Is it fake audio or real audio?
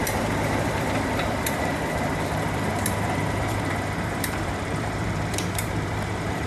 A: fake